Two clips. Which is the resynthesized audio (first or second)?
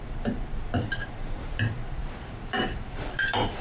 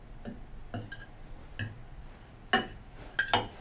first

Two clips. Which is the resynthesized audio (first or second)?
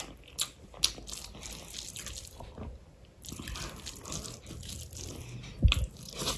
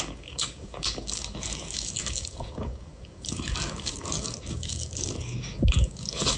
second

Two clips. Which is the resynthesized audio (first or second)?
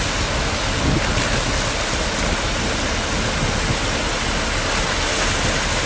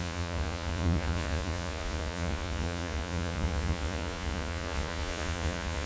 second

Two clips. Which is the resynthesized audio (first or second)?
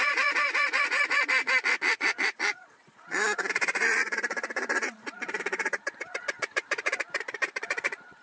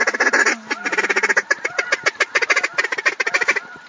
first